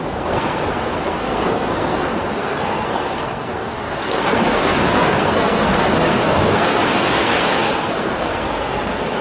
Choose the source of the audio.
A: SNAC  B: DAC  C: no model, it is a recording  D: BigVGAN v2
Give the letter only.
A